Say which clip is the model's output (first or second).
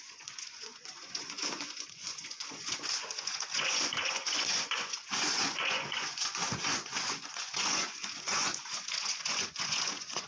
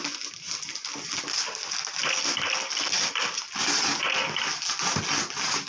first